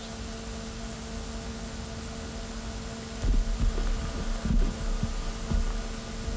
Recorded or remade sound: recorded